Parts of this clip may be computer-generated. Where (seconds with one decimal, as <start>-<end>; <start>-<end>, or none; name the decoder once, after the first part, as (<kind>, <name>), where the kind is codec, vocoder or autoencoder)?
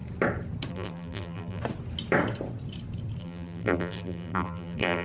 0.7-1.6 (vocoder, BigVGAN v2); 3.2-5.0